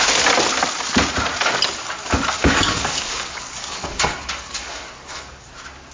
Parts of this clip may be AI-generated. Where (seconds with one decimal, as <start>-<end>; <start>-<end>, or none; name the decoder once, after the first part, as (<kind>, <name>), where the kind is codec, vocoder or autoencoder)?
2.0-5.5 (codec, DAC)